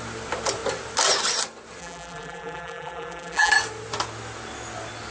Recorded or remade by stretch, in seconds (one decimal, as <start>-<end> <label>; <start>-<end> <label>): 0.0-1.8 recorded; 1.8-3.5 remade; 3.5-5.1 recorded